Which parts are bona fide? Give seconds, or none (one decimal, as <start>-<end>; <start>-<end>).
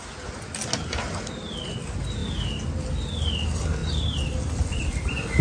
0.0-5.4